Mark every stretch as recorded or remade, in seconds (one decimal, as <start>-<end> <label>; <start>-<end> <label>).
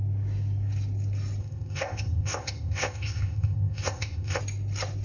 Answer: 0.0-1.4 recorded; 1.4-4.4 remade; 4.4-5.0 recorded